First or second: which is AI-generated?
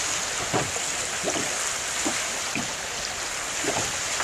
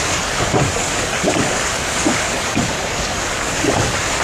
second